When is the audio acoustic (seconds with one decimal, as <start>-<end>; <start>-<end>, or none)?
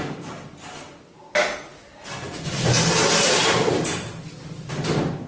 0.0-5.3